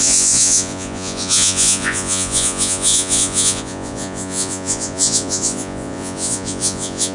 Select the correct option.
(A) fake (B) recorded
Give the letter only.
A